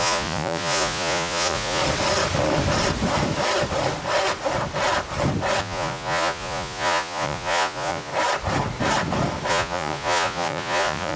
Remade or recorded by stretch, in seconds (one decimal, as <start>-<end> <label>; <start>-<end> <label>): 0.0-1.8 remade; 1.8-5.6 recorded; 5.6-8.1 remade; 8.1-9.5 recorded; 9.5-11.2 remade